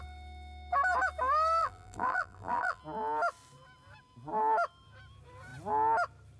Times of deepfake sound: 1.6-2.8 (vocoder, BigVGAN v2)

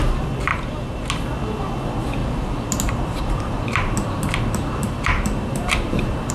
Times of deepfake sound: 0.5-1.1 (vocoder, BigVGAN v2); 2.2-6.3

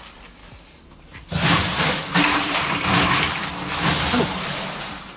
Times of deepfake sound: 0.4-3.5 (vocoder, BigVGAN v2)

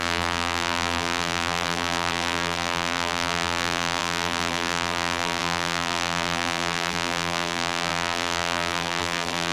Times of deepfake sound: 0.0-9.5 (vocoder, BigVGAN v2)